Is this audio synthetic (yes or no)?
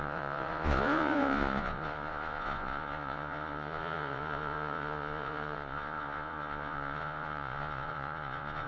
yes